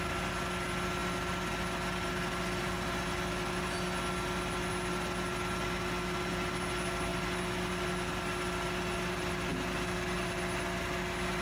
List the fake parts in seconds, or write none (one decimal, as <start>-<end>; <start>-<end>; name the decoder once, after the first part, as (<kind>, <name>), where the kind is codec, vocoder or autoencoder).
none